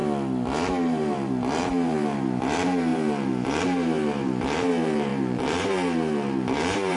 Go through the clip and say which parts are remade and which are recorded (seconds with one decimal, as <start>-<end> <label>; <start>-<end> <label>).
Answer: 0.0-0.7 recorded; 0.7-7.0 remade